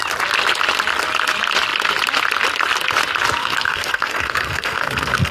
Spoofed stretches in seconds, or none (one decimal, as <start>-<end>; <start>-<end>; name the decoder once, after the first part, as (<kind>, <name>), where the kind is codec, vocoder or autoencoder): 3.4-5.3 (codec, SNAC)